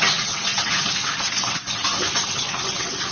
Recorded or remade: remade